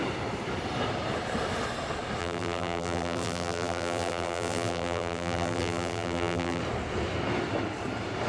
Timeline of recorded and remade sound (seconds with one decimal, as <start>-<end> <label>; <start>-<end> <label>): 0.0-2.2 recorded; 2.2-6.6 remade; 6.6-8.3 recorded